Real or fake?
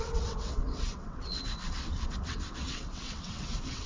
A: fake